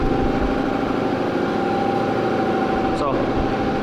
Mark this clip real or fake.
real